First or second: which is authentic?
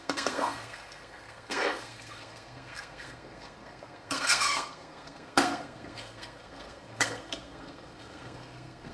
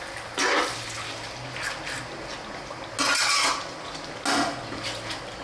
second